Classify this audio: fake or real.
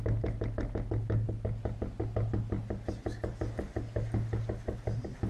real